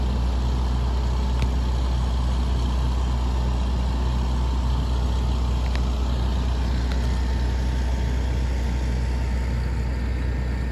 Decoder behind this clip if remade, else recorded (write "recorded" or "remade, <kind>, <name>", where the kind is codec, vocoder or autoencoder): recorded